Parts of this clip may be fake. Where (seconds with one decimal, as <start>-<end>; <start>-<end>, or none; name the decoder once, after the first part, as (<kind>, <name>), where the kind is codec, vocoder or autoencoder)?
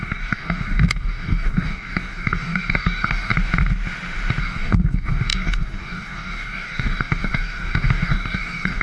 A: 0.0-3.3 (codec, DAC); 4.4-8.8